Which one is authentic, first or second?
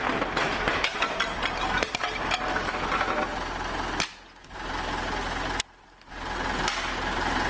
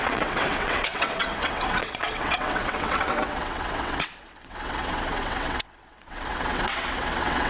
first